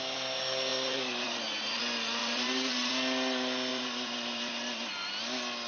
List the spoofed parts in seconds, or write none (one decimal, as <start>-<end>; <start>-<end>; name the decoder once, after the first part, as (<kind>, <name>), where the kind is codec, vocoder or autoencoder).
0.7-1.8 (vocoder, BigVGAN v2); 2.2-2.9; 3.7-5.1